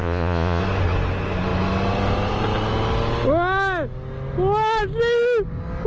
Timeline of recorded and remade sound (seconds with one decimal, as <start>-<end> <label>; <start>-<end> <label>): 0.0-0.6 remade; 0.6-5.9 recorded